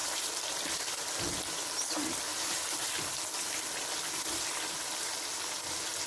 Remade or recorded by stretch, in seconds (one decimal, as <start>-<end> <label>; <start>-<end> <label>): 0.0-0.9 remade; 0.9-2.3 recorded; 2.3-3.0 remade; 3.0-6.1 recorded